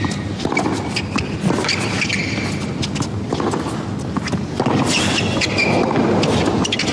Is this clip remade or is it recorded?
recorded